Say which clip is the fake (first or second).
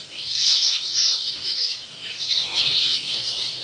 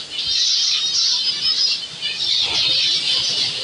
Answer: first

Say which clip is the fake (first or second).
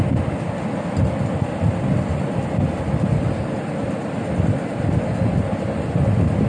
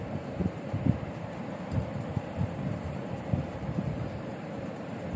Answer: second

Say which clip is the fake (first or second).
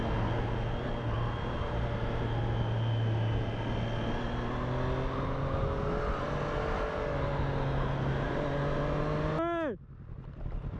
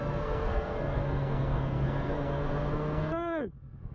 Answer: second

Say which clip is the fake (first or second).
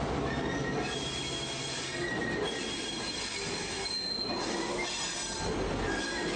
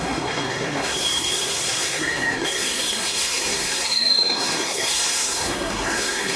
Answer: second